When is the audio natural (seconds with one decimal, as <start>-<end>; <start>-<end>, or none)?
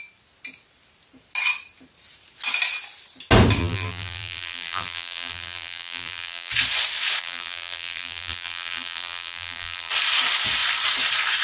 0.0-3.6; 6.5-7.2; 9.9-11.4